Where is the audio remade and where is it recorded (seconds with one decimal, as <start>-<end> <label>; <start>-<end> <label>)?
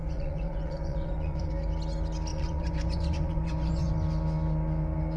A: 0.0-1.5 remade; 1.5-2.3 recorded; 2.3-3.9 remade; 3.9-5.2 recorded